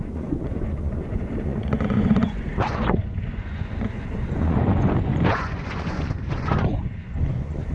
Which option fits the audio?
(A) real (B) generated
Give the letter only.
B